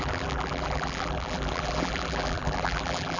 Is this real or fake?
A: fake